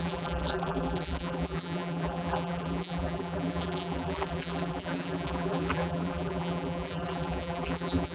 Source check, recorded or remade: remade